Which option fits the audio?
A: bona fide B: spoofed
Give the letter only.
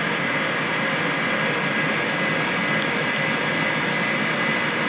A